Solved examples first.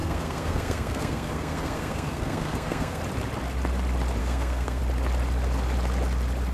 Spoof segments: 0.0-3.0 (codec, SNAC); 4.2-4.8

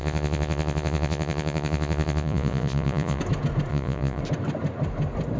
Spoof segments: 0.0-3.2 (vocoder, Vocos); 3.7-4.2

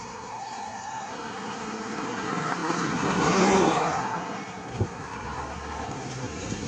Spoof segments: 0.0-6.7 (codec, SNAC)